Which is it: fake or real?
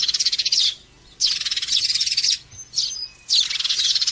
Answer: real